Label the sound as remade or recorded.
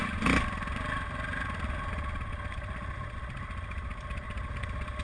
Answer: recorded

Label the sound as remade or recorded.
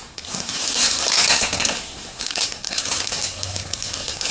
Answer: remade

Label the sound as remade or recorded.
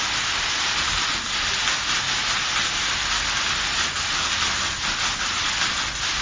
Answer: recorded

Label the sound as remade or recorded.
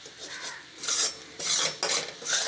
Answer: recorded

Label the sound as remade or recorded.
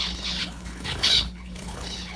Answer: remade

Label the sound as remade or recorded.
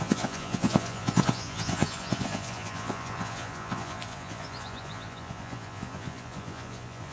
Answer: remade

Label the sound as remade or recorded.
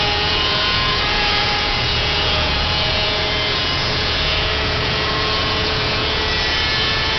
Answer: remade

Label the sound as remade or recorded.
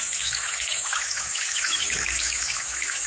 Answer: remade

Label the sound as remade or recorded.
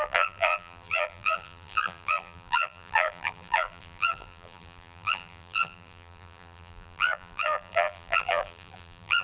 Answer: remade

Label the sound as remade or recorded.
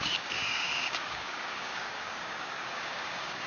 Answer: remade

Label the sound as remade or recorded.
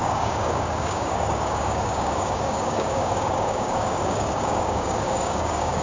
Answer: remade